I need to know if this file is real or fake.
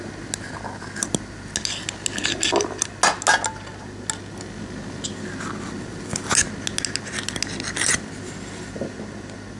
real